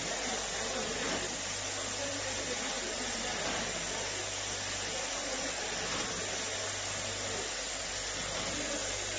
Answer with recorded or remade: recorded